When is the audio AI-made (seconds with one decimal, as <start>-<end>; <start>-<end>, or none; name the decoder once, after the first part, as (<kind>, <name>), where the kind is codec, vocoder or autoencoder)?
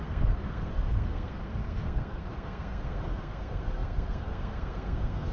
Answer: 0.0-5.3 (codec, SNAC)